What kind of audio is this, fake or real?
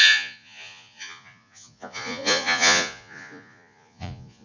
fake